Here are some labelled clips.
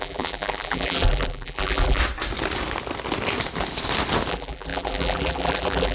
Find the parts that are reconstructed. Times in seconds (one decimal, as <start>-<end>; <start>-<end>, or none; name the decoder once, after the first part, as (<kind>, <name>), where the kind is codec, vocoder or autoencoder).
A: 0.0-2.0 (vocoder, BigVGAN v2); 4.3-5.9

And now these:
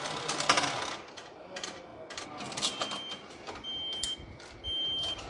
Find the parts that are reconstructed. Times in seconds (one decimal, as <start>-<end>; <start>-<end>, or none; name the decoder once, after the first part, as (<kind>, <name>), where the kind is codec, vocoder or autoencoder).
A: none

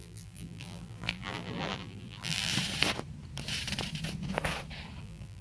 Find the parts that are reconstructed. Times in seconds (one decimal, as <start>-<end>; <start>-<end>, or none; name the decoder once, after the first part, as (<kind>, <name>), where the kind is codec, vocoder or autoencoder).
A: 0.0-2.5 (vocoder, BigVGAN v2); 5.0-5.4